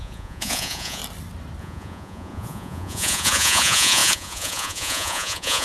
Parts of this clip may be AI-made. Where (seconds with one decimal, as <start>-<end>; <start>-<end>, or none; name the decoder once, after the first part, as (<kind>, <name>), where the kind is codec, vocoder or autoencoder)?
0.0-1.0 (vocoder, Vocos); 1.6-5.6